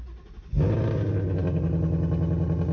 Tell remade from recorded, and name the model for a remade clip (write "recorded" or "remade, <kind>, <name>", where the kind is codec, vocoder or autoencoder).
recorded